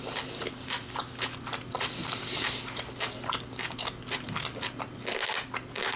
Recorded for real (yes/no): yes